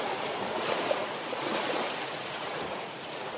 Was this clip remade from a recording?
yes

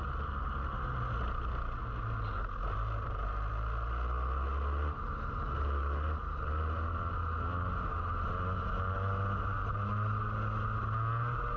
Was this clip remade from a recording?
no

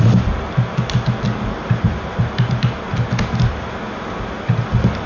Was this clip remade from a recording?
no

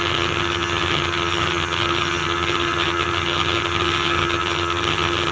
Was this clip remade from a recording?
yes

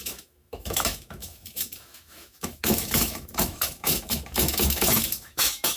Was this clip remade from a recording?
yes